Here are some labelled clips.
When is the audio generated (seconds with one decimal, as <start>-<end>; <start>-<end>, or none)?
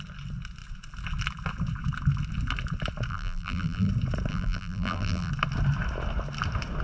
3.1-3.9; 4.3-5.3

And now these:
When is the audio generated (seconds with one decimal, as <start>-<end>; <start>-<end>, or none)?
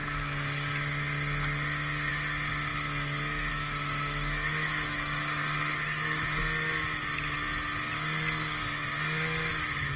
2.1-2.7; 3.5-5.4; 9.5-10.0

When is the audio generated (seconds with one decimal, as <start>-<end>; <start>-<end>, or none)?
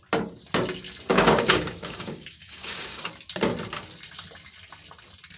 1.1-3.1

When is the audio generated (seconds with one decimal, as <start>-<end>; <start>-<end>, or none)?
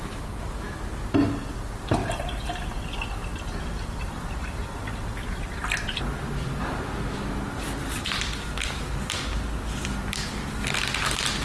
none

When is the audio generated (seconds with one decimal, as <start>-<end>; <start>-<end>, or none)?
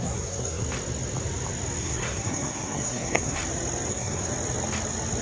0.0-0.6; 1.8-3.4; 3.9-4.3